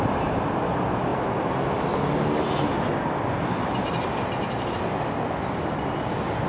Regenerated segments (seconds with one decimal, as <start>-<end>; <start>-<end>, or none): none